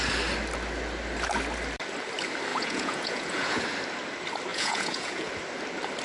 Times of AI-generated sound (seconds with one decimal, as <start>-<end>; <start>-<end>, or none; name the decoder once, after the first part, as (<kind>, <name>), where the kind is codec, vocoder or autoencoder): 2.5-3.6 (vocoder, Vocos); 4.5-5.3